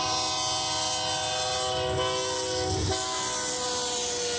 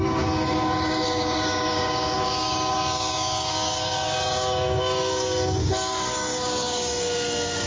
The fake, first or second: second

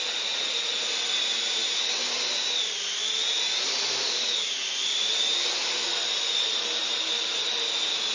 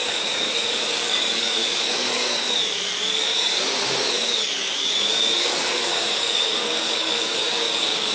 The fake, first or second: second